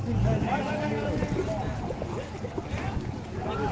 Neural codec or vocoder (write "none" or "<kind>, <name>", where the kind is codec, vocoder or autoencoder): none